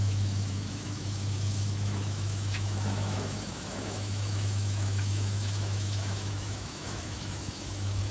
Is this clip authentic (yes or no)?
no